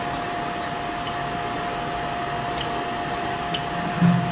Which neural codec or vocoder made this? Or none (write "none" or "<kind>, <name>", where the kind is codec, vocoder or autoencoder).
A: none